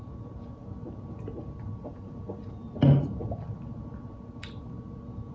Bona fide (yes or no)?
yes